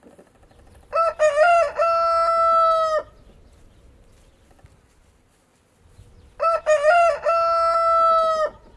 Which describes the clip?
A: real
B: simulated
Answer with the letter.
A